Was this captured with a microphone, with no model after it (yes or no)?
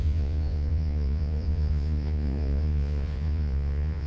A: no